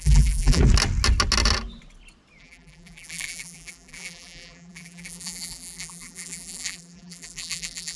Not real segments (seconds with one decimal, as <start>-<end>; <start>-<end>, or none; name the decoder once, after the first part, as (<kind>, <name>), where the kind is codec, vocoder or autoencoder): 0.0-0.6 (vocoder, BigVGAN v2); 2.4-8.0